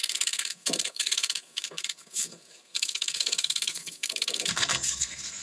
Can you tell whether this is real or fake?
fake